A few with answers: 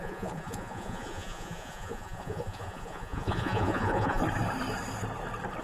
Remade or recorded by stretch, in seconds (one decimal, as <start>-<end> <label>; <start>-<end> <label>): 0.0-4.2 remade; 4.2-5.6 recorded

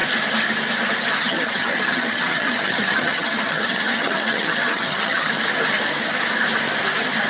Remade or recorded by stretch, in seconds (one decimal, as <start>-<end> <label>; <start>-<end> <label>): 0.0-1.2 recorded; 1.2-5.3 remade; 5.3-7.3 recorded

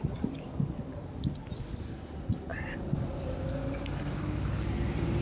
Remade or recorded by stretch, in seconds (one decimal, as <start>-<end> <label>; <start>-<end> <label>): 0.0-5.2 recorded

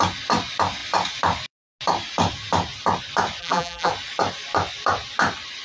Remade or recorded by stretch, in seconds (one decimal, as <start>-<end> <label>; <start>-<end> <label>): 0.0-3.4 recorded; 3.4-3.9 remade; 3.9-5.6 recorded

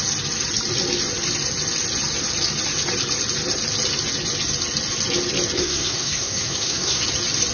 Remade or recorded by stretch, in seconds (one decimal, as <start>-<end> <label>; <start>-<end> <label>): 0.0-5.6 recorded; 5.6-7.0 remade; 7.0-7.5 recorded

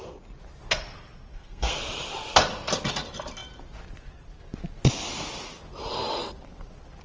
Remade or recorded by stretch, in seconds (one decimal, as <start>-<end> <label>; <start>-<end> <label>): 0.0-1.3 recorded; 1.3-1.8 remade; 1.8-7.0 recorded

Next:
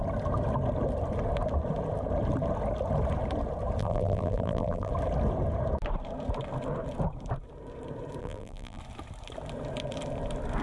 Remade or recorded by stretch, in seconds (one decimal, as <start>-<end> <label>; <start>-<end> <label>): 0.0-3.8 recorded; 3.8-4.9 remade; 4.9-8.2 recorded; 8.2-8.8 remade; 8.8-10.6 recorded